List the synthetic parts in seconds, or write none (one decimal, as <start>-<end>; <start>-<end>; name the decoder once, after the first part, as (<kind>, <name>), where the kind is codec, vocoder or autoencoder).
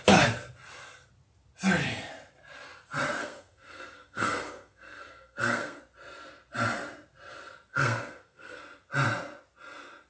3.2-5.8 (codec, SNAC); 7.7-8.6